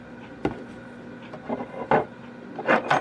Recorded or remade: recorded